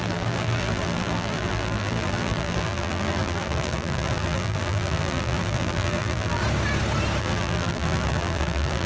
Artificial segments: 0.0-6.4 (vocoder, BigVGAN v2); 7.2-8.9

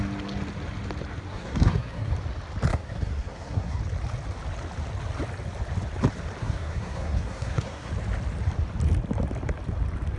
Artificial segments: 1.3-2.1 (codec, SNAC); 2.7-3.8; 6.4-7.9

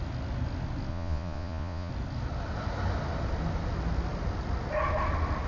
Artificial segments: 0.9-1.9 (vocoder, Vocos)

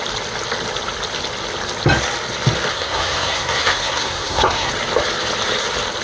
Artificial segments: 2.7-4.7 (codec, SNAC)

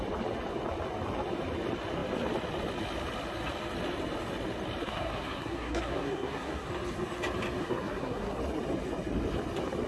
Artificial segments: 4.8-6.7 (codec, SNAC); 7.6-8.4